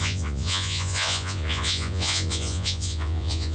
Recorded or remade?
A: remade